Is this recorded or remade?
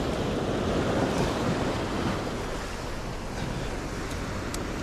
recorded